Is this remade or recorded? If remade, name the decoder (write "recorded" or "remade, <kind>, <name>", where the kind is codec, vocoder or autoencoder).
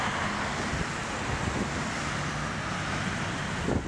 recorded